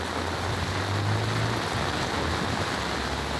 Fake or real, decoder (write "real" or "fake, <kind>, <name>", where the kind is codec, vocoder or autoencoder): real